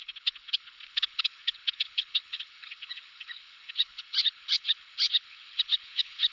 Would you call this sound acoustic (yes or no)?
no